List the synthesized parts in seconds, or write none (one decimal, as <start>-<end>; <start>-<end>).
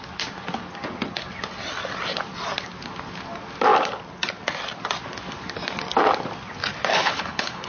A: 6.9-7.7